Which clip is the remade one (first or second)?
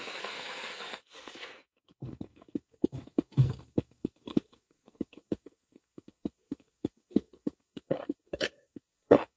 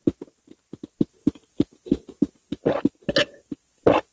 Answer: first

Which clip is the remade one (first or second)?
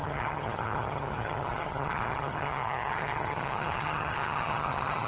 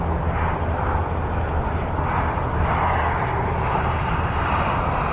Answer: first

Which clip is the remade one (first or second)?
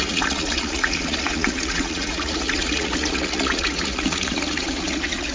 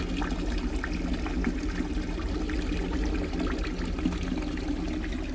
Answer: first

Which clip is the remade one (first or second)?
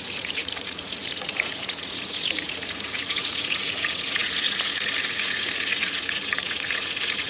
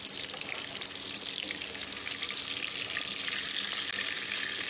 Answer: first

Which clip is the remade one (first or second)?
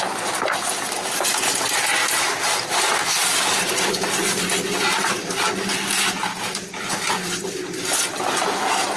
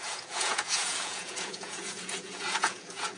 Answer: second